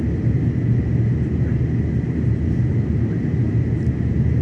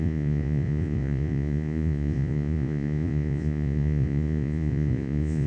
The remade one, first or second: second